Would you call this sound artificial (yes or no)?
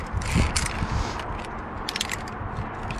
no